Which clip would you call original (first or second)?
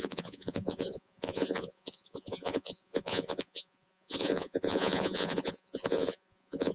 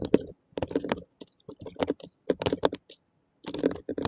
second